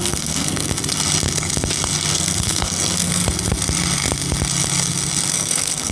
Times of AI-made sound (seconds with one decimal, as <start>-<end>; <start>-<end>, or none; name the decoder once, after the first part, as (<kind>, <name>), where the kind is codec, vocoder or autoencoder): 0.0-0.7 (codec, SNAC); 2.1-3.2; 5.3-5.9